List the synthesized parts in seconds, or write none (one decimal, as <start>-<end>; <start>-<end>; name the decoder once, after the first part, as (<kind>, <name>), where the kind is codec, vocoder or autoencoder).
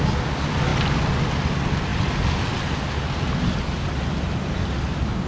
none